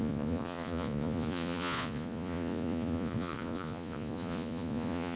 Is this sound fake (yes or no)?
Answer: yes